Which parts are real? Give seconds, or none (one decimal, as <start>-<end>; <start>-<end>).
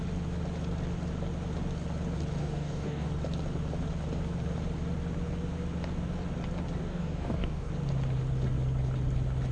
0.0-2.4; 3.1-6.9; 7.7-9.5